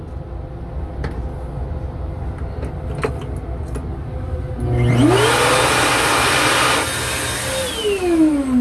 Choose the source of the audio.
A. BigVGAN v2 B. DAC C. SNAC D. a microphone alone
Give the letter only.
D